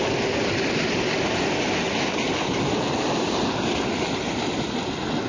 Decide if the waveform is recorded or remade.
recorded